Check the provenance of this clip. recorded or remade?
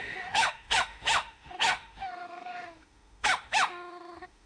remade